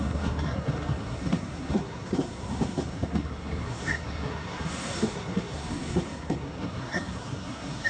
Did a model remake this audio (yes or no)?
yes